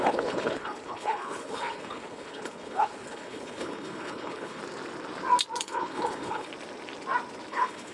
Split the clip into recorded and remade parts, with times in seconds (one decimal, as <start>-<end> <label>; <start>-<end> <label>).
0.0-4.6 remade; 4.6-5.6 recorded; 5.6-6.5 remade; 6.5-7.5 recorded; 7.5-7.9 remade